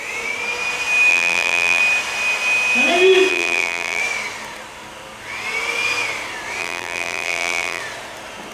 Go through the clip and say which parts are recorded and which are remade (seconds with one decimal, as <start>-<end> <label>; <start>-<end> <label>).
0.0-1.1 recorded; 1.1-1.8 remade; 1.8-3.3 recorded; 3.3-4.0 remade; 4.0-6.6 recorded; 6.6-7.8 remade; 7.8-8.5 recorded